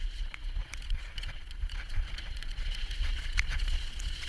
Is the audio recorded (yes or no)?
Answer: no